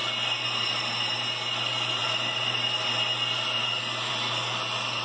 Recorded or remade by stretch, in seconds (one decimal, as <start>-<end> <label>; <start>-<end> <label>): 0.0-5.0 recorded